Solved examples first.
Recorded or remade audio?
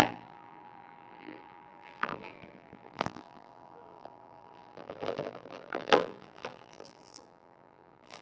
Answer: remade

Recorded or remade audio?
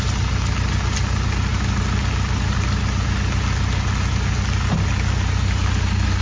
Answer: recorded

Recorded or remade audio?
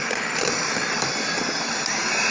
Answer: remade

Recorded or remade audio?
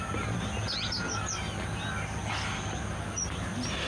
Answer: recorded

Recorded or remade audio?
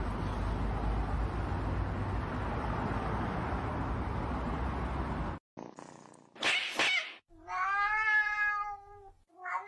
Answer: recorded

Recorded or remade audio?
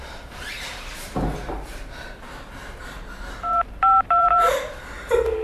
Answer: remade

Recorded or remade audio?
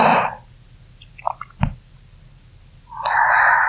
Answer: recorded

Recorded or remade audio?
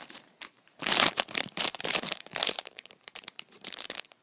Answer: remade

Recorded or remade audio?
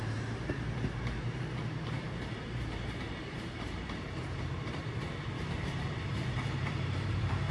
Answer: remade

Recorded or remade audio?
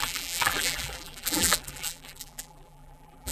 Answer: remade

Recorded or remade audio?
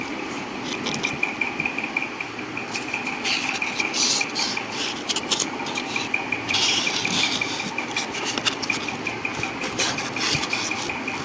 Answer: remade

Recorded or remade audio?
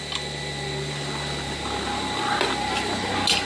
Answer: recorded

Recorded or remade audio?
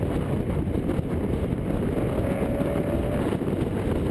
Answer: recorded